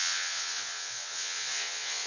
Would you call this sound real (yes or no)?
no